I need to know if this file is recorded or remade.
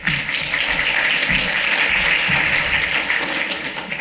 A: recorded